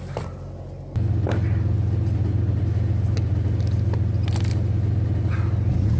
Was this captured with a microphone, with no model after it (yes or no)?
yes